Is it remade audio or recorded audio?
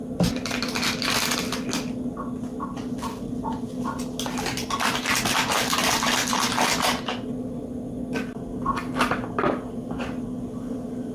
recorded